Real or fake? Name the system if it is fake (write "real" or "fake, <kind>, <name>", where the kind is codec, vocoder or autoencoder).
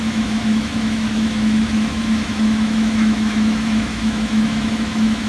fake, autoencoder, DAC-VAE